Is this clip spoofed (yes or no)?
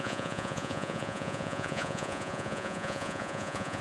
yes